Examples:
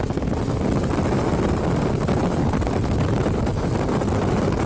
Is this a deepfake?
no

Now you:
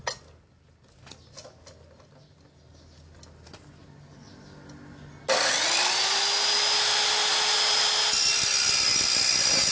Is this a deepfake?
no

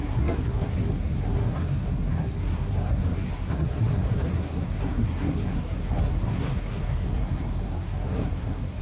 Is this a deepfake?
yes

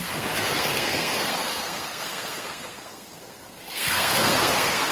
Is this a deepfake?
yes